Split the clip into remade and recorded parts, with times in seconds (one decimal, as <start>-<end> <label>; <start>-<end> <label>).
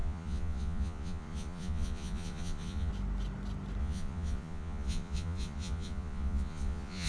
0.0-2.9 remade; 2.9-3.8 recorded; 3.8-7.1 remade